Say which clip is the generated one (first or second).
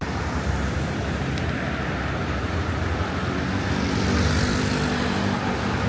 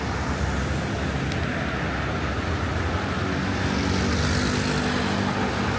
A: first